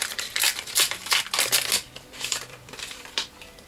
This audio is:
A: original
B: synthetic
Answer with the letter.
B